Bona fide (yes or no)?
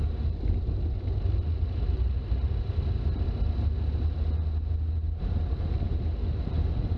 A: yes